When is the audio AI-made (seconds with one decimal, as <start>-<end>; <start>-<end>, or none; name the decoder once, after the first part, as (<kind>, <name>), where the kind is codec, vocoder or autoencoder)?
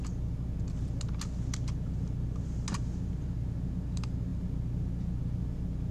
none